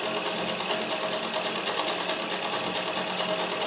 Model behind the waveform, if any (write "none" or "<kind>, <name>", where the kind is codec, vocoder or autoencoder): none